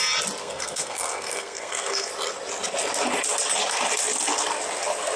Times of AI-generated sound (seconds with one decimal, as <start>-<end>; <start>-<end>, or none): 0.4-2.1